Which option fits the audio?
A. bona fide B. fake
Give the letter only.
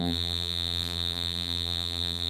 B